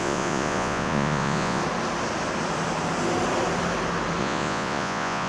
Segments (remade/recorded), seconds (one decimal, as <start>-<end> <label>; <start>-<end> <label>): 0.0-1.6 remade; 1.6-4.2 recorded; 4.2-5.3 remade